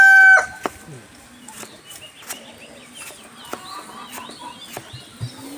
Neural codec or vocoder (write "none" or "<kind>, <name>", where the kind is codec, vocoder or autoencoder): none